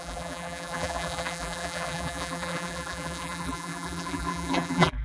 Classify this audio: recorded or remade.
remade